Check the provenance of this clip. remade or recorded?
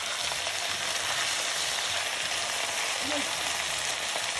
recorded